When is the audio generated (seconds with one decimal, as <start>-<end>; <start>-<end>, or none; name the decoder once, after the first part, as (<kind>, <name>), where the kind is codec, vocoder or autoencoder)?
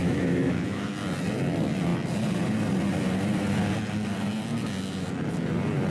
0.0-0.9 (autoencoder, DAC-VAE)